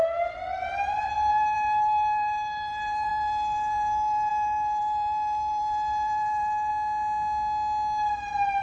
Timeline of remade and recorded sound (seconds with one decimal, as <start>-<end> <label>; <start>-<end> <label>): 0.0-6.7 remade; 6.7-8.6 recorded

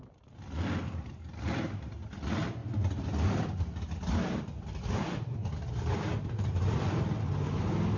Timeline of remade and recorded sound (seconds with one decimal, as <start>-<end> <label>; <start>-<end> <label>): 0.0-8.0 recorded

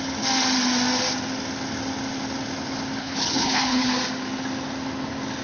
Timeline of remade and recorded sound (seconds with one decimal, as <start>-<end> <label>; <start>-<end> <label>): 0.0-3.0 recorded; 3.0-3.9 remade; 3.9-5.4 recorded

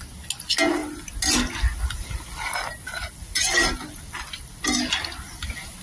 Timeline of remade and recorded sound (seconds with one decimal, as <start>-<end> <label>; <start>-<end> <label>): 0.0-5.8 recorded

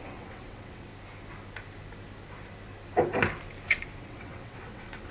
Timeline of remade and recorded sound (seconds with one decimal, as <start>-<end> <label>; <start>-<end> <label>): 0.0-0.9 remade; 0.9-4.0 recorded; 4.0-5.1 remade

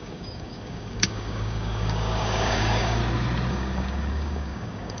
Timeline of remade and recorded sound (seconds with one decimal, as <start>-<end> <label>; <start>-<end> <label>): 0.0-3.0 remade; 3.0-3.5 recorded; 3.5-5.0 remade

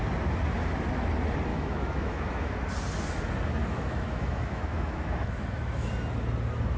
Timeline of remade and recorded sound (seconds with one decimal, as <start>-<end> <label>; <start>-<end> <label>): 0.0-1.5 recorded; 1.5-2.5 remade; 2.5-3.6 recorded; 3.6-5.9 remade; 5.9-6.8 recorded